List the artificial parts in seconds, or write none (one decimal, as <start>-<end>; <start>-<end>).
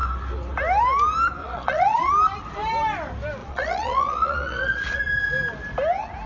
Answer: 1.4-2.1; 3.4-5.0